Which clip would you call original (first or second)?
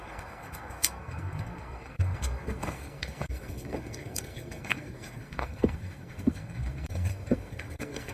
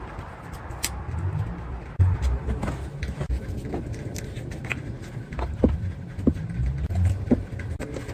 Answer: second